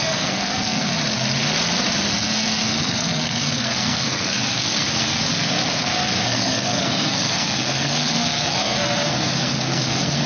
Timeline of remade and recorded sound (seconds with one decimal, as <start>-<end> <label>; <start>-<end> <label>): 0.0-1.0 remade; 1.0-2.1 recorded; 2.1-10.3 remade